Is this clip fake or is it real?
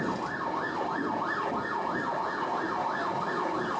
real